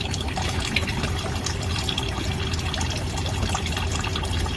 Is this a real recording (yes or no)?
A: yes